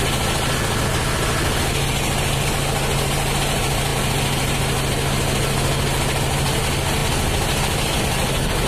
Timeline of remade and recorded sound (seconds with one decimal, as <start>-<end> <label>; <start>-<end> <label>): 0.0-8.7 recorded